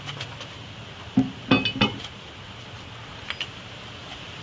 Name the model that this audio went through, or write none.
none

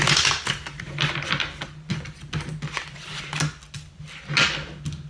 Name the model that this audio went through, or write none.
none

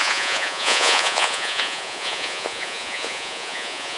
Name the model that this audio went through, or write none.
vocoder, Vocos